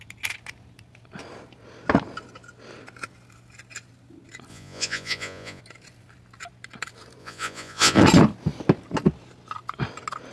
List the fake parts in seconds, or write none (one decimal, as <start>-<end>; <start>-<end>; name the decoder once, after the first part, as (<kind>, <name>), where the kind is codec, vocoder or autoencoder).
4.5-5.6 (vocoder, Vocos); 7.2-8.0